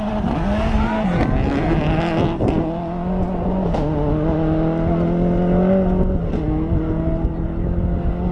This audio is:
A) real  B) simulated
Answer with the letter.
A